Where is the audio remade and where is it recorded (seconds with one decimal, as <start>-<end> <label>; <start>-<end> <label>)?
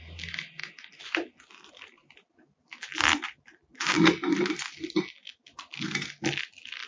0.0-6.9 recorded